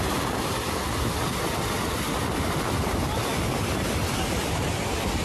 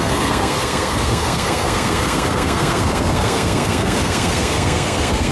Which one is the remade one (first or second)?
second